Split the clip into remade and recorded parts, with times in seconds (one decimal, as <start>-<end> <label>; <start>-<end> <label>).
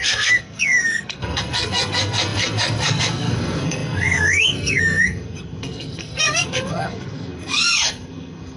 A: 0.0-8.6 remade